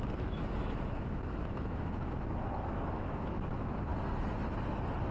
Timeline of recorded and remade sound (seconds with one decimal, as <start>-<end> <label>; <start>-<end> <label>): 0.0-3.9 remade; 3.9-5.1 recorded